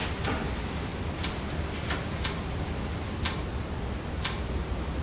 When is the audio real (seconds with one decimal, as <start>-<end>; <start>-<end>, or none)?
0.9-3.9